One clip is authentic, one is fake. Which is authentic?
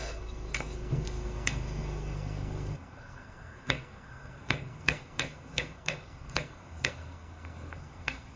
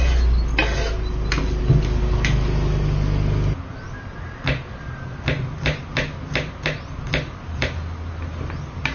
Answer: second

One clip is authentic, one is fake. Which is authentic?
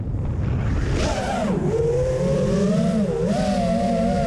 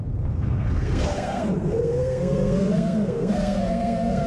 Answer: first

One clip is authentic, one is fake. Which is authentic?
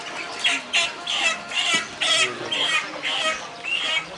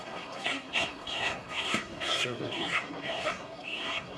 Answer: first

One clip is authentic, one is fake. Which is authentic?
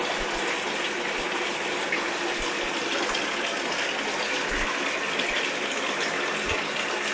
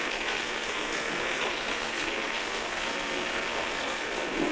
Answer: first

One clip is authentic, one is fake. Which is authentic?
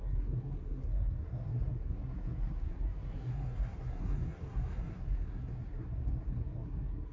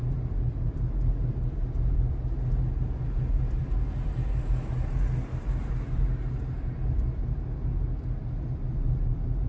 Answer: second